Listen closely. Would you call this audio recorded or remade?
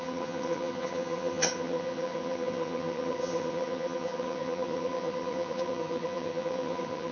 remade